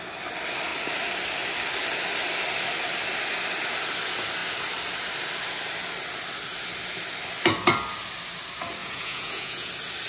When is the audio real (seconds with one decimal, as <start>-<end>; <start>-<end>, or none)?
0.0-8.8; 9.7-10.1